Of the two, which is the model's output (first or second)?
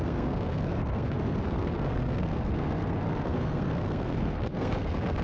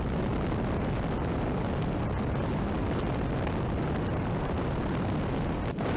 first